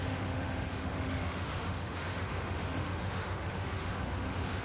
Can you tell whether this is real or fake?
fake